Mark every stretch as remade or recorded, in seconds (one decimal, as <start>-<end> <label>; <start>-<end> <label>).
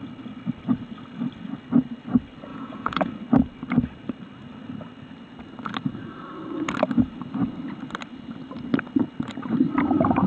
0.0-2.5 recorded; 2.5-3.1 remade; 3.1-10.3 recorded